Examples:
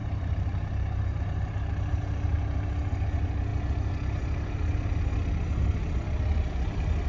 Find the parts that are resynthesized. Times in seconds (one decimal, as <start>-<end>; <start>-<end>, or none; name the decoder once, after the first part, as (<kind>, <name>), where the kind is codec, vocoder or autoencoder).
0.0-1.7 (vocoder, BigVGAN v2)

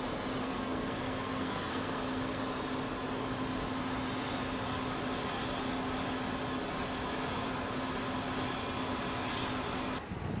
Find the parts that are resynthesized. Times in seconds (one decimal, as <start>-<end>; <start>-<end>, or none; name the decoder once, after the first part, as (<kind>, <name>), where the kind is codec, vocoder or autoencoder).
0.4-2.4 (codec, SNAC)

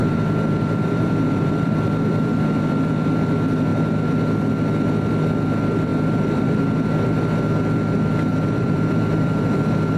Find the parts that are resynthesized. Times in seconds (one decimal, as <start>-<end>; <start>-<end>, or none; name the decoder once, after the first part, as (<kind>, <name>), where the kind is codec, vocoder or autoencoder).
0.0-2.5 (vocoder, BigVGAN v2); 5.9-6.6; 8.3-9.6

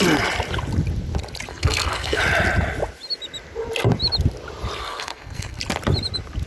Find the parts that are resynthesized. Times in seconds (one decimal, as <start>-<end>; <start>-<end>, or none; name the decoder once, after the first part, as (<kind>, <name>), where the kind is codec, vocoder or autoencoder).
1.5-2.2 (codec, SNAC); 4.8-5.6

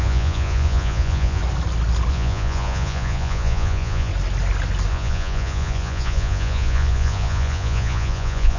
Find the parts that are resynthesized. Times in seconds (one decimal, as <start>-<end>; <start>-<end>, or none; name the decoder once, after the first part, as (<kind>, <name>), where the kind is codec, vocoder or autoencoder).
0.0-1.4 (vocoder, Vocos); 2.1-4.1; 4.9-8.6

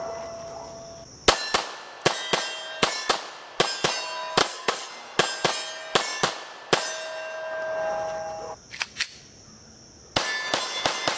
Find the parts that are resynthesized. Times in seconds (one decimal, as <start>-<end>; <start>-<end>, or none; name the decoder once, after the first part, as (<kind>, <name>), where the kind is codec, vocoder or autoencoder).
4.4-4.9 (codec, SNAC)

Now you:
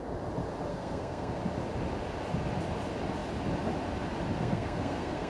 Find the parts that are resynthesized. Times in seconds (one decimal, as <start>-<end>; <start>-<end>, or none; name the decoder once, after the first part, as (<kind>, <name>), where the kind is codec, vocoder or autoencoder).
0.7-1.4 (codec, SNAC); 4.4-5.3